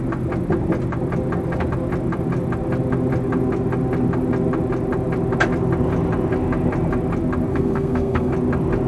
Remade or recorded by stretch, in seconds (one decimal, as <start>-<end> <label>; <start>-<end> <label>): 0.0-7.5 recorded; 7.5-8.3 remade; 8.3-8.9 recorded